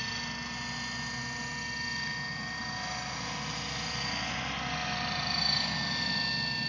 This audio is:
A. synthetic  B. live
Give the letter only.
B